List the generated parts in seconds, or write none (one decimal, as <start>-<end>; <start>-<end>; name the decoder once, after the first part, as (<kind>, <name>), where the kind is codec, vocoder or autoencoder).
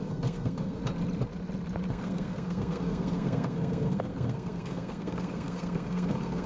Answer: 0.0-0.8 (codec, SNAC); 1.9-6.5